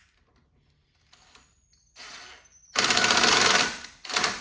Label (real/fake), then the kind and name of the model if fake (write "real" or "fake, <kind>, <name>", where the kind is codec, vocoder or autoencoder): real